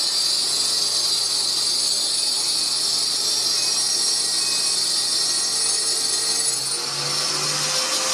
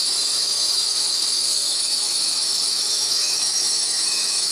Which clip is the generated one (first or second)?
second